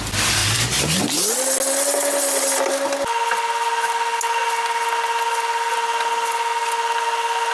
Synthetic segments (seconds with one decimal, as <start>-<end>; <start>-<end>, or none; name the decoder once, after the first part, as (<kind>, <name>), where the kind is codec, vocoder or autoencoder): 0.4-1.0 (vocoder, BigVGAN v2)